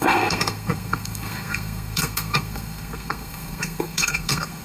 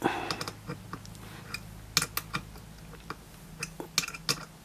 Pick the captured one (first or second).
second